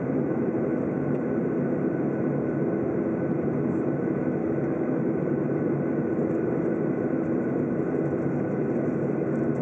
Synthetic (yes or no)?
no